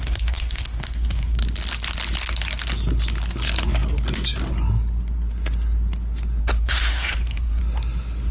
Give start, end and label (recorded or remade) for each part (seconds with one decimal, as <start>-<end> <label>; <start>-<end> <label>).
0.0-1.4 remade; 1.4-6.4 recorded; 6.4-7.6 remade; 7.6-8.3 recorded